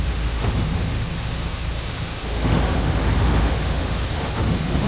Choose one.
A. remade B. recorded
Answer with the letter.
A